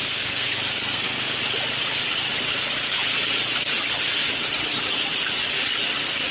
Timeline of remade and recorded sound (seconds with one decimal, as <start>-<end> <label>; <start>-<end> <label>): 0.0-1.4 remade; 1.4-6.3 recorded